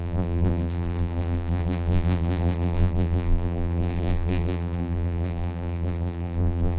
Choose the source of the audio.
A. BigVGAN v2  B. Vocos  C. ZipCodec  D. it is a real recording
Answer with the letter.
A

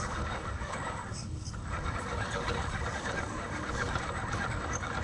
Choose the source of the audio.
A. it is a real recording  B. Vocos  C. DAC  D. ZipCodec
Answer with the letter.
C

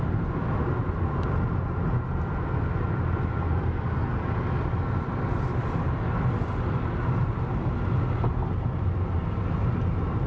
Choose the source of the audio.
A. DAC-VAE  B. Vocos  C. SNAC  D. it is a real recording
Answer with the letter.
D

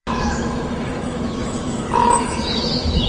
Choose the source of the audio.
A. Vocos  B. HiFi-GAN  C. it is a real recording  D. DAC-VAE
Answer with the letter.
D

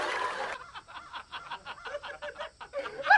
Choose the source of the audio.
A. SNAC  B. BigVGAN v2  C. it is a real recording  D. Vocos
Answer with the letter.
C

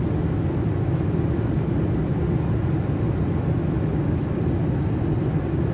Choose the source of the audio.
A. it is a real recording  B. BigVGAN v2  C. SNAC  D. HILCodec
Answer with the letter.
A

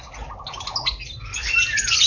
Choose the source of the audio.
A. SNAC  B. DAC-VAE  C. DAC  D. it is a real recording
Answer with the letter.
D